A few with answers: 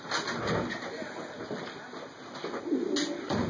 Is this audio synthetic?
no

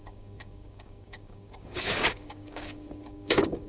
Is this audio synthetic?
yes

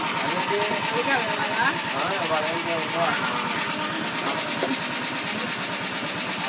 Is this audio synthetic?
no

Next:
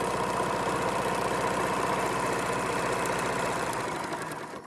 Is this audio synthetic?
no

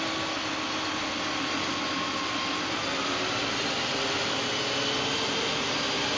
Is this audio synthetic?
no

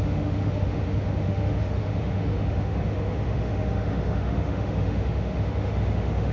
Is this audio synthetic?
yes